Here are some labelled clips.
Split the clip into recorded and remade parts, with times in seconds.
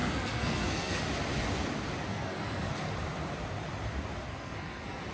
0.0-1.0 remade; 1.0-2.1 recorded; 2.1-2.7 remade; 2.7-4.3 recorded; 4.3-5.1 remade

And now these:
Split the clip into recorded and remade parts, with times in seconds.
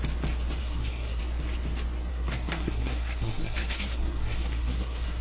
0.0-0.6 recorded; 0.6-1.2 remade; 1.2-2.1 recorded; 2.1-5.2 remade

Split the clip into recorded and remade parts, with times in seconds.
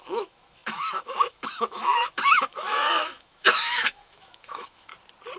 0.0-4.9 remade; 4.9-5.4 recorded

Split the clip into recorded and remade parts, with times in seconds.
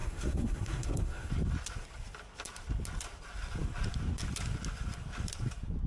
0.0-1.3 remade; 1.3-5.9 recorded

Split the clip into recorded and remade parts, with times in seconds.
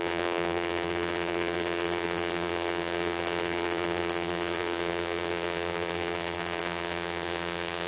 0.0-7.9 remade